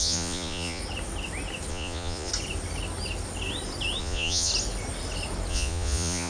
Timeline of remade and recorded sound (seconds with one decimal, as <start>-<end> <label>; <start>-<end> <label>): 0.0-0.8 remade; 0.8-1.7 recorded; 1.7-2.3 remade; 2.3-4.0 recorded; 4.0-4.5 remade; 4.5-5.5 recorded; 5.5-6.3 remade